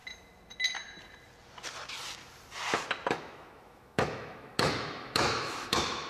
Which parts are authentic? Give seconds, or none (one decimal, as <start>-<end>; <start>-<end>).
0.0-3.1